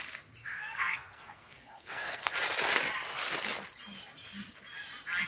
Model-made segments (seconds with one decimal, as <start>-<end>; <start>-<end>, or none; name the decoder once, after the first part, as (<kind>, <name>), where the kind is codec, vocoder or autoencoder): 0.4-2.3 (codec, SNAC)